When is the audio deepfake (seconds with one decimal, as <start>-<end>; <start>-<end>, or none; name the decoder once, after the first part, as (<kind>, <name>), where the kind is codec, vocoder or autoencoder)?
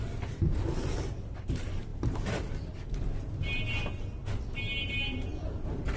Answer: 1.9-3.7 (vocoder, BigVGAN v2); 5.3-6.0